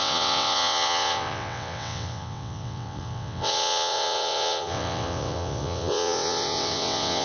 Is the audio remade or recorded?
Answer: remade